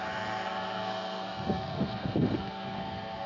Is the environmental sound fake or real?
fake